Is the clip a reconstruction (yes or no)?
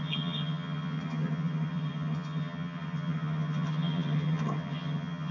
yes